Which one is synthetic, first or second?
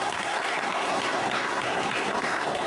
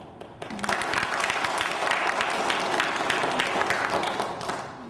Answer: first